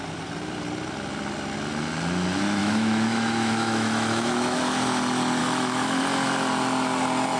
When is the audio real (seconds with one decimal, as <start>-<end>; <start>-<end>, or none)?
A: 0.0-2.6; 4.6-5.4; 6.0-7.4